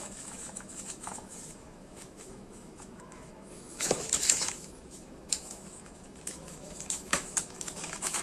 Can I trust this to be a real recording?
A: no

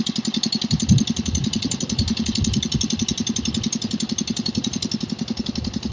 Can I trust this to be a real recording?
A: yes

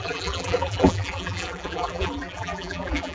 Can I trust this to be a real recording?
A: no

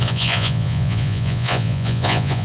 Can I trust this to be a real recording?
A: no